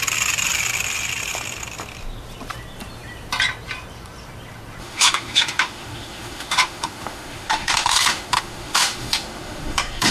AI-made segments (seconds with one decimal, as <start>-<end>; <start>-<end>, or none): 4.8-10.1